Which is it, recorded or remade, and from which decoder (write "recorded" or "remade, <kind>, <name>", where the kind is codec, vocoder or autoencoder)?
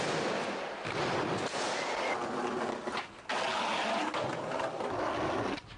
recorded